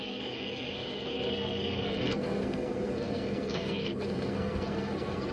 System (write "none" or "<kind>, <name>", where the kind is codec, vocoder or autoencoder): codec, SNAC